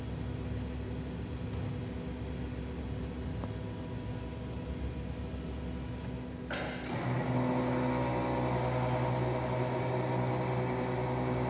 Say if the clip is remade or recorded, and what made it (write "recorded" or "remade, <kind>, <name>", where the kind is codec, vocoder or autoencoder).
recorded